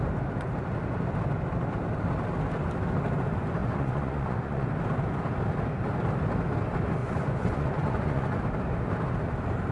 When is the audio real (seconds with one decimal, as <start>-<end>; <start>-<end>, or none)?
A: 0.0-3.6; 4.7-7.0; 8.4-9.7